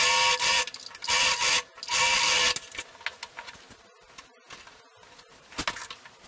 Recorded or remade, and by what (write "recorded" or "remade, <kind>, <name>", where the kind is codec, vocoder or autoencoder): recorded